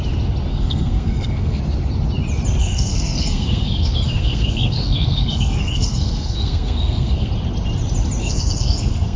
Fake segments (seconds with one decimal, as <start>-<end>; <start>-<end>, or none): 0.5-1.6; 2.6-7.3; 8.2-9.2